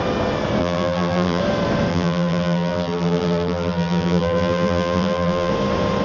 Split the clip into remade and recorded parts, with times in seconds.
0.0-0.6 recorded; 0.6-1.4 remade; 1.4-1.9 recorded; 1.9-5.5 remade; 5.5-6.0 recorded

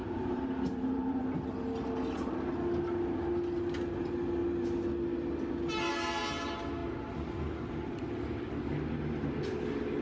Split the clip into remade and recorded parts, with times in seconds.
0.0-1.2 remade; 1.2-10.0 recorded

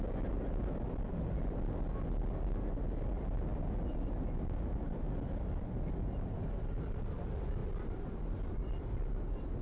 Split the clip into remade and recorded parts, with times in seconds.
0.0-9.6 recorded